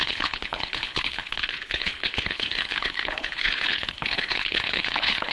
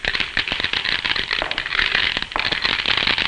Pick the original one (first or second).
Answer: second